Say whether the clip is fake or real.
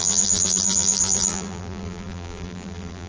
fake